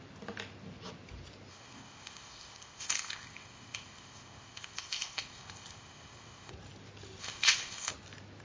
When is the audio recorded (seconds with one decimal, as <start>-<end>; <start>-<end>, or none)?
0.0-1.5; 6.5-7.2; 7.9-8.4

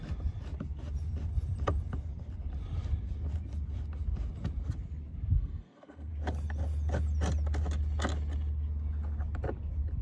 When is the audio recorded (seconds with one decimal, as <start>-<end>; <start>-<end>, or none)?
0.0-5.3; 6.1-10.0